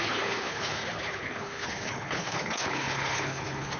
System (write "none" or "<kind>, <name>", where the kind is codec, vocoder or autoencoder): codec, HILCodec